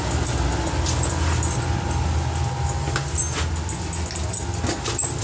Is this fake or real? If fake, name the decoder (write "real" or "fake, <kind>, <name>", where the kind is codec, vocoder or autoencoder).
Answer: real